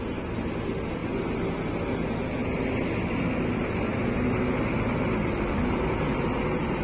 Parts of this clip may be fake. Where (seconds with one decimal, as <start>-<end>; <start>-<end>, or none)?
none